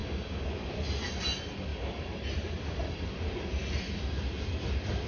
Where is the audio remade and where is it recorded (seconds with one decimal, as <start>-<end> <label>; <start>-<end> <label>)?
0.0-0.5 remade; 0.5-5.1 recorded